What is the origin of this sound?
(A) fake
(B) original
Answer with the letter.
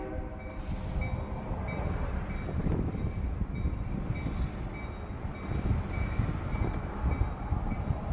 B